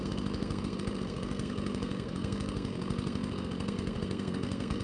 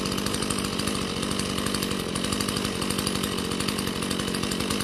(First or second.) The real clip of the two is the second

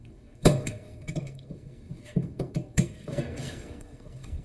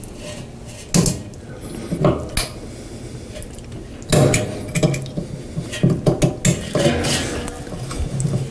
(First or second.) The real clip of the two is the second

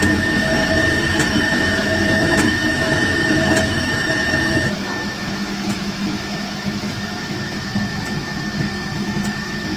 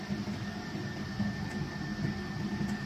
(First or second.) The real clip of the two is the second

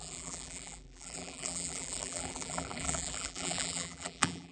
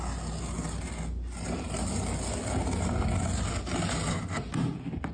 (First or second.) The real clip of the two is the second